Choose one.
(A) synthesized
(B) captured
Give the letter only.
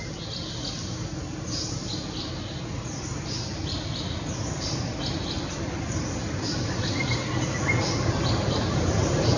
A